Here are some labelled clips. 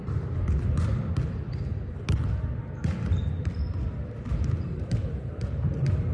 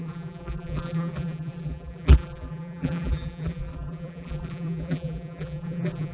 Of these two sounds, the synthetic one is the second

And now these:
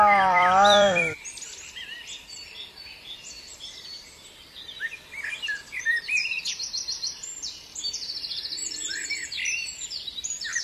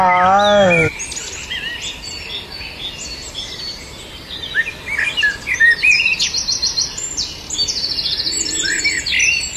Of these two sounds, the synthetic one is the first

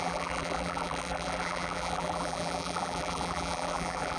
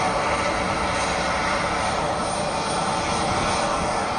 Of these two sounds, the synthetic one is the first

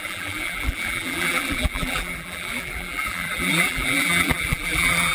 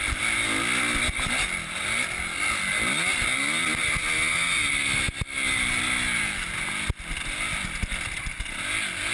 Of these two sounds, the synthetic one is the first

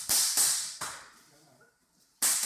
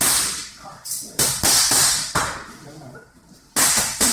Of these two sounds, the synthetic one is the second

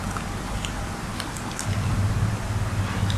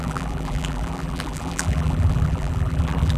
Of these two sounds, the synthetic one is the second